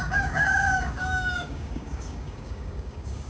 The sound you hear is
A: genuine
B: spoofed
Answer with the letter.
B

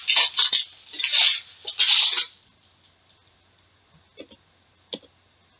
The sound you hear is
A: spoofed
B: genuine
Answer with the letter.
B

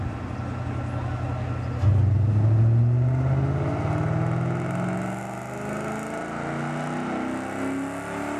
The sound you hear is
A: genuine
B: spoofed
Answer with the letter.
A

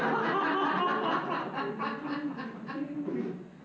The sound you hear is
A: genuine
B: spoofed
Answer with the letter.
A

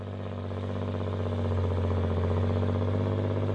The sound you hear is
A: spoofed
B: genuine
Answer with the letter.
B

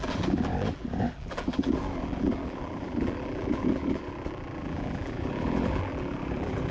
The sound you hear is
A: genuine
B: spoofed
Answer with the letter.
B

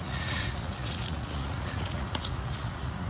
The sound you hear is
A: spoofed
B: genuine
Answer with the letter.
A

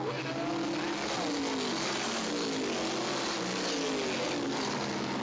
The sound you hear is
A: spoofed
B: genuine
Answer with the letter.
B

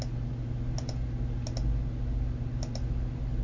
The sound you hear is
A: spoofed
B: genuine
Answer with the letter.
B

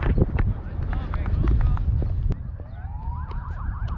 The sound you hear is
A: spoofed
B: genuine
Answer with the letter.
B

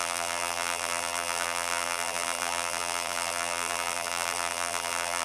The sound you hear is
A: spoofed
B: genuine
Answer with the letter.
A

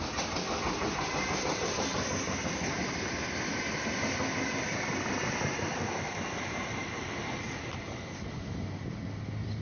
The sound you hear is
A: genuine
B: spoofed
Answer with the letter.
A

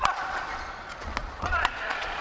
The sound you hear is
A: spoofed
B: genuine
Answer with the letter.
A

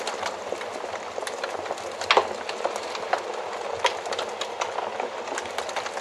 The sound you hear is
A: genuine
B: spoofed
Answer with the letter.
A